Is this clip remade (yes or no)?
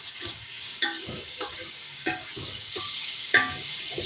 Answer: yes